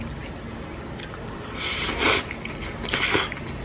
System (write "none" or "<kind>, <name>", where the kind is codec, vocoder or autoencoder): none